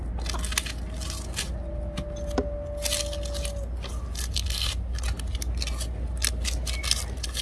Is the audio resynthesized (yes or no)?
no